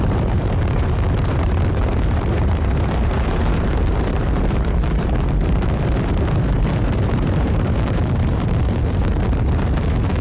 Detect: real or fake fake